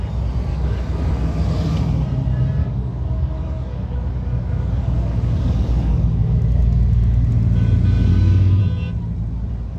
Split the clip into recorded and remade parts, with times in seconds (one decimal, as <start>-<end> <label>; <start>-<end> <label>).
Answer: 0.0-0.5 recorded; 0.5-1.1 remade; 1.1-2.6 recorded; 2.6-7.3 remade; 7.3-8.1 recorded; 8.1-8.6 remade; 8.6-9.8 recorded